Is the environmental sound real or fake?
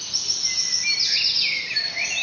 real